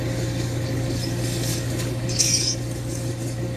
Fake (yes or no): yes